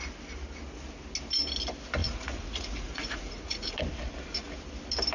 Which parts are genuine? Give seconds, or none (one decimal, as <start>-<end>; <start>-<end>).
0.0-2.0; 3.8-5.1